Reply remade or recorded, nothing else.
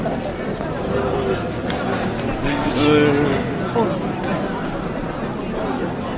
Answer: recorded